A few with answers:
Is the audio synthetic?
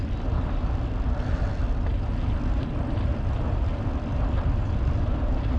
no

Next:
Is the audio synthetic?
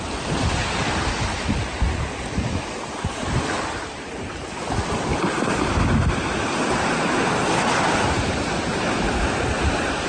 no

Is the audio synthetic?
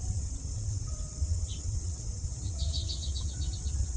yes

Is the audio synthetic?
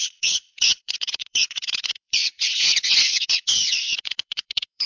yes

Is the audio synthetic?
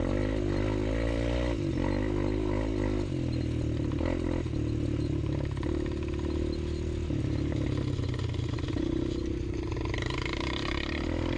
no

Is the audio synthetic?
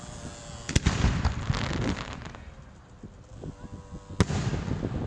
no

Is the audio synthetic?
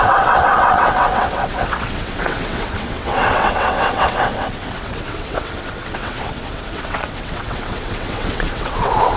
yes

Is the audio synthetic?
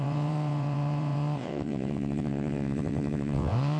yes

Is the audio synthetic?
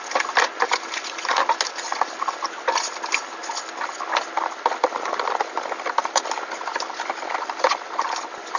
no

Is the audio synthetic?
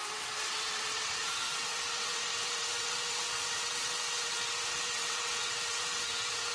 yes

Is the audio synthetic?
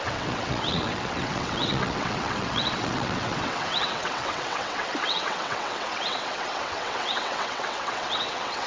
yes